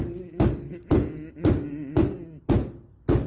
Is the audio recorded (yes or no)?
yes